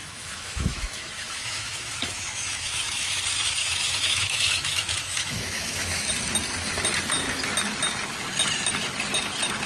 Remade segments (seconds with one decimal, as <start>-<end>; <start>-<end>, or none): 0.0-3.2; 3.6-6.1